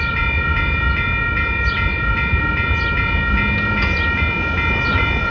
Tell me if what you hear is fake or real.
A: real